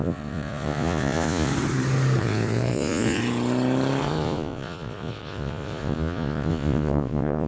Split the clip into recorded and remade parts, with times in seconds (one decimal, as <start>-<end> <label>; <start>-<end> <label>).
0.0-1.5 remade; 1.5-2.2 recorded; 2.2-3.2 remade; 3.2-4.0 recorded; 4.0-7.5 remade